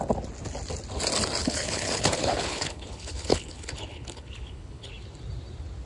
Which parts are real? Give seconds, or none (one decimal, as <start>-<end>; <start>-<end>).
0.0-1.4; 4.9-5.9